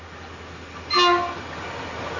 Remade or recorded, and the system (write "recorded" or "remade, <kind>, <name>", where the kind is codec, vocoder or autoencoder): recorded